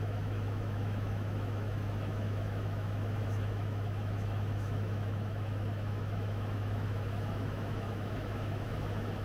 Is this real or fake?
fake